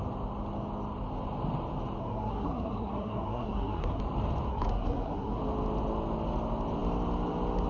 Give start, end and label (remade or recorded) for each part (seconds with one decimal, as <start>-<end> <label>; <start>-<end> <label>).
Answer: 0.0-2.0 recorded; 2.0-4.0 remade; 4.0-4.5 recorded; 4.5-5.4 remade; 5.4-7.7 recorded